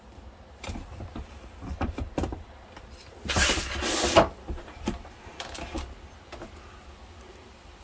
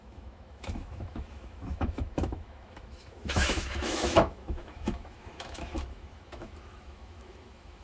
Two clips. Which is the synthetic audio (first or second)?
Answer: second